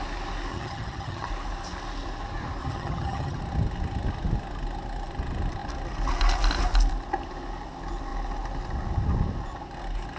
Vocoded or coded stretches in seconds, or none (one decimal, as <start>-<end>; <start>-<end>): 0.5-1.3; 2.6-3.4